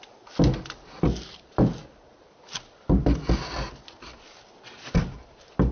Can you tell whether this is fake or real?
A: real